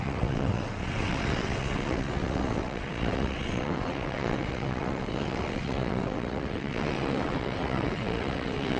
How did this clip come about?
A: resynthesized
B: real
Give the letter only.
A